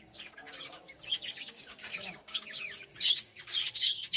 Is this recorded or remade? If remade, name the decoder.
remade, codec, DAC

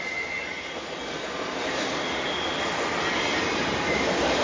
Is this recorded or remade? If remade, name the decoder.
recorded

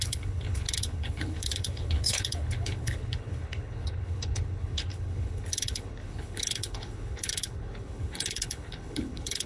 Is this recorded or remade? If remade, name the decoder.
remade, codec, HILCodec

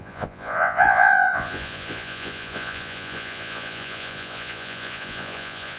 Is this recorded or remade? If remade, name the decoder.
remade, vocoder, Vocos